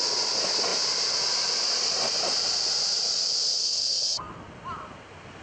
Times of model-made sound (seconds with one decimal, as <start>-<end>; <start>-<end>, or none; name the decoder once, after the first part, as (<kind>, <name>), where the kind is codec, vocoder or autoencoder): 3.6-4.3 (codec, SNAC)